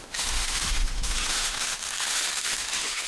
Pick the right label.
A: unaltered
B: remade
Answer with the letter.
B